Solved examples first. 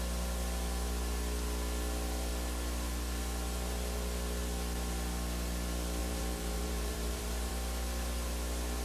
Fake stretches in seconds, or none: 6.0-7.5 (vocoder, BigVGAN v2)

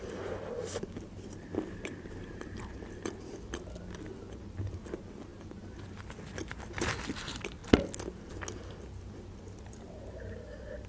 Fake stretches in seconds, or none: none